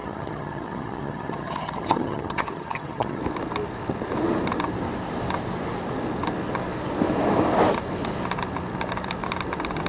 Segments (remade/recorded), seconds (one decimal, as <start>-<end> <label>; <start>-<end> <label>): 0.0-3.2 remade; 3.2-9.9 recorded